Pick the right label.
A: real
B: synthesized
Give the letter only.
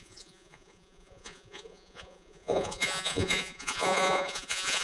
B